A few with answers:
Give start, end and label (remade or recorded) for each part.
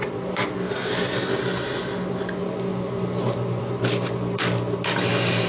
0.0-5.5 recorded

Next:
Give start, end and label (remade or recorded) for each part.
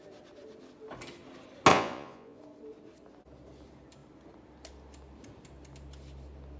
0.0-1.7 recorded; 1.7-2.4 remade; 2.4-6.6 recorded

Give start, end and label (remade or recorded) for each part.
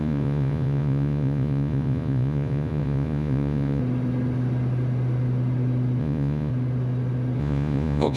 0.0-3.8 remade; 3.8-6.0 recorded; 6.0-6.5 remade; 6.5-7.4 recorded; 7.4-8.2 remade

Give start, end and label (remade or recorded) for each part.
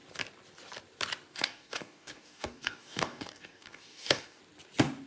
0.0-1.3 recorded; 1.3-4.4 remade; 4.4-5.1 recorded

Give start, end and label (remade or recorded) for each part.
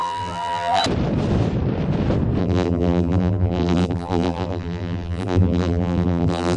0.0-0.8 remade; 0.8-2.4 recorded; 2.4-6.6 remade